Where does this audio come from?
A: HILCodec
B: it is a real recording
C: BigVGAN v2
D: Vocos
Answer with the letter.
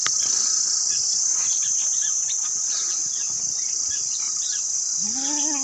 B